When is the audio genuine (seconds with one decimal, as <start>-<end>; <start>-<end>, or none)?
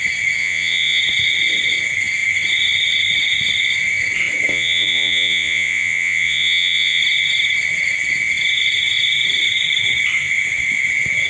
0.0-0.4; 1.0-4.5; 7.0-11.3